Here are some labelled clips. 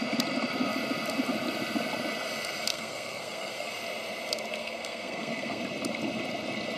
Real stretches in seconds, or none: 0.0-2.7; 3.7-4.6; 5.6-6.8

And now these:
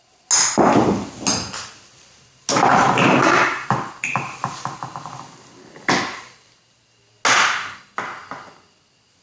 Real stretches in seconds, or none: 0.0-2.7; 4.5-9.2

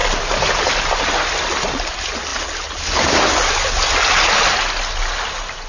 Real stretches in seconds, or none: 0.0-5.7